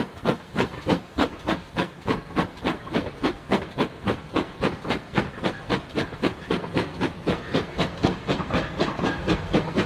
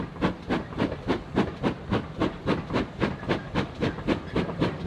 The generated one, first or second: first